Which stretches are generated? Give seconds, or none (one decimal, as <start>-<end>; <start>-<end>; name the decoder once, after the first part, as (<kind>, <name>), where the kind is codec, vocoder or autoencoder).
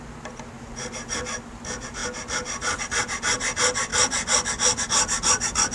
none